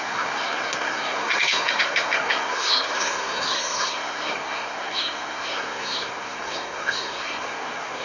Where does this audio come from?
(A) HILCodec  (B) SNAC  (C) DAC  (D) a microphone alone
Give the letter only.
B